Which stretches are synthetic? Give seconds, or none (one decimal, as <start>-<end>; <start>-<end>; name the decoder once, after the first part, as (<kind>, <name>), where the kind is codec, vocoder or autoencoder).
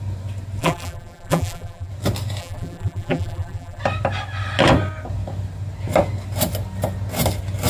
0.6-1.9 (vocoder, BigVGAN v2); 2.4-3.8